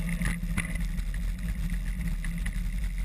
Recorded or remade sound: recorded